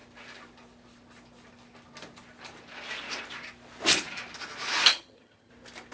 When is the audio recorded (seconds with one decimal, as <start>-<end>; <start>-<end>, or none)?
0.0-4.9; 5.5-5.9